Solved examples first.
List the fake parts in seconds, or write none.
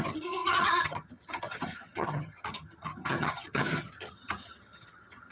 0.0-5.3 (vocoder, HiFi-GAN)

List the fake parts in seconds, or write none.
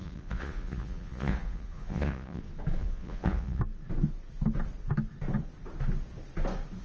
0.0-2.4 (vocoder, Vocos); 2.8-3.6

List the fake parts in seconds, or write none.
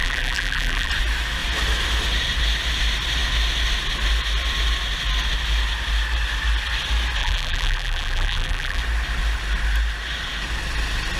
0.0-0.9 (vocoder, BigVGAN v2); 7.2-8.8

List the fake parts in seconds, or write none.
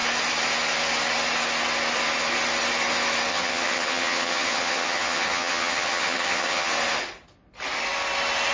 3.3-6.7 (vocoder, HiFi-GAN)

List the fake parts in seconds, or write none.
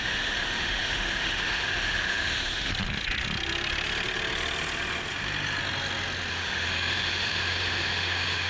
0.0-2.7 (autoencoder, DAC-VAE); 6.3-8.5